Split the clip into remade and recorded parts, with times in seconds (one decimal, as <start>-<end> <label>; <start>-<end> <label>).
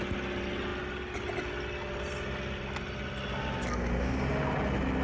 0.0-5.0 recorded